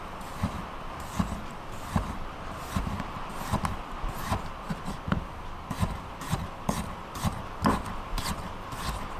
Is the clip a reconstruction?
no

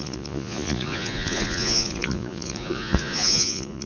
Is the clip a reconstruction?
yes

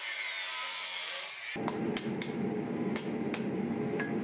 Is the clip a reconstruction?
no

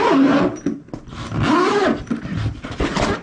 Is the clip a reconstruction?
no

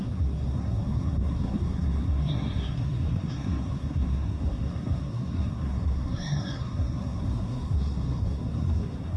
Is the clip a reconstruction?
yes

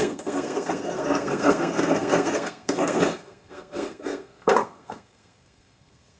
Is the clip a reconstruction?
yes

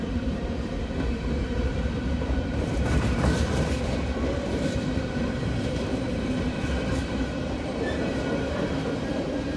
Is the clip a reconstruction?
yes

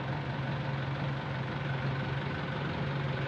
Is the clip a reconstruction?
no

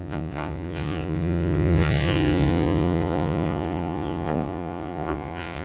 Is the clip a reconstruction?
yes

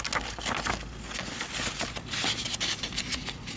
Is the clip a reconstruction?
no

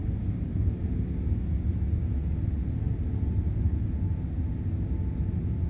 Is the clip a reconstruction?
no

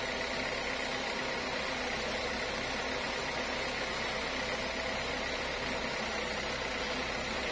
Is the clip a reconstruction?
no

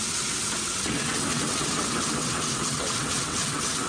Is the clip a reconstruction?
yes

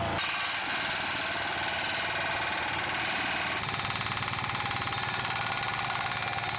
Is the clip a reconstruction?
no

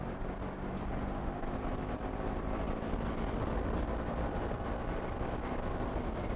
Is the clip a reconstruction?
no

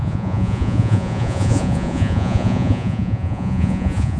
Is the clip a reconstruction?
yes